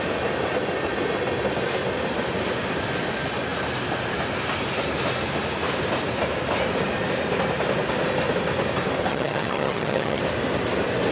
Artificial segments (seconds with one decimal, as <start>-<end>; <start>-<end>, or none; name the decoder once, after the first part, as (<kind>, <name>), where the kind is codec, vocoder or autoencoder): 9.1-10.2 (vocoder, HiFi-GAN)